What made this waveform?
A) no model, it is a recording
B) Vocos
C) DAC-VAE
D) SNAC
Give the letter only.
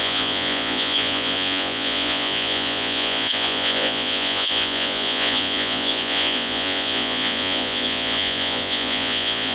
B